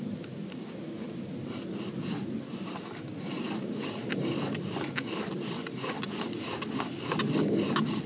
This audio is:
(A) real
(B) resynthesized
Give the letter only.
A